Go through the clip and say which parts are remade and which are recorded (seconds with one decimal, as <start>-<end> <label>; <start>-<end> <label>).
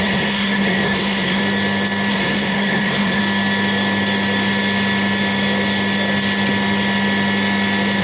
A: 0.0-1.4 remade; 1.4-2.1 recorded; 2.1-3.2 remade; 3.2-8.0 recorded